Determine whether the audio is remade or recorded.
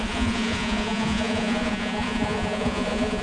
remade